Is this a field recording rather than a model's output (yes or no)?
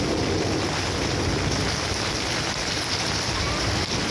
yes